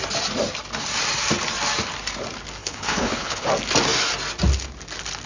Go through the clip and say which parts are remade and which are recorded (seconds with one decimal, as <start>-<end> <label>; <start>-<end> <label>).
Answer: 0.0-2.6 recorded; 2.6-3.5 remade; 3.5-5.3 recorded